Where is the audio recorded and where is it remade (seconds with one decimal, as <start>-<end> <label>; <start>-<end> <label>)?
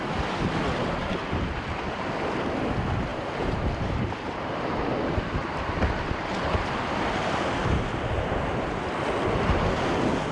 0.0-3.1 recorded; 3.1-4.8 remade; 4.8-10.3 recorded